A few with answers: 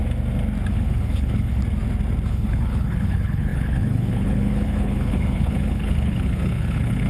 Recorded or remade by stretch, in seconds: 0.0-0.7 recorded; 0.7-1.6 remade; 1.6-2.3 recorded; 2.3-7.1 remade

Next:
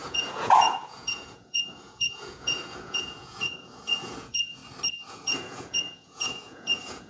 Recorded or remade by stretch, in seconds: 0.0-4.6 remade; 4.6-5.1 recorded; 5.1-7.1 remade